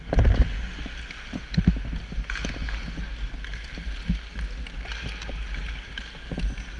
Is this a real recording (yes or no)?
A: yes